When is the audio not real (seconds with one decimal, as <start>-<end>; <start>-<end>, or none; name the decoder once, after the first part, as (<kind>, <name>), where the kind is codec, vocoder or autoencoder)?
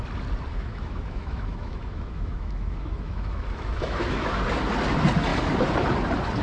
0.5-4.3 (autoencoder, DAC-VAE)